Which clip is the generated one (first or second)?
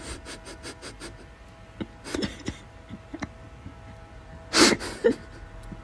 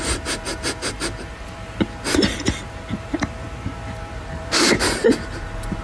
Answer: second